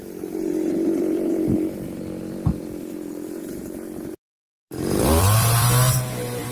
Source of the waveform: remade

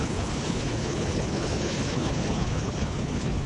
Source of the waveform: remade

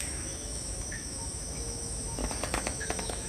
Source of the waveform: remade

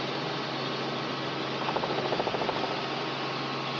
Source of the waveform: recorded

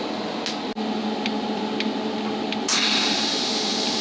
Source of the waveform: recorded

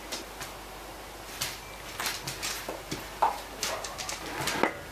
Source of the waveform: recorded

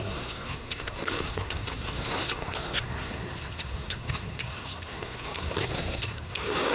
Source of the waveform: remade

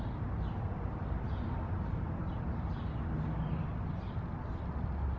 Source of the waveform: recorded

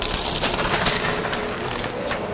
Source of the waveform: recorded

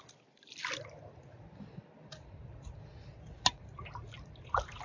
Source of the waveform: recorded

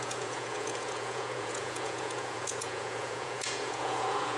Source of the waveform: remade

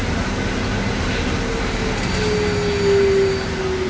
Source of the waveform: recorded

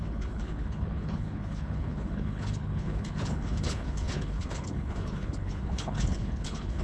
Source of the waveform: remade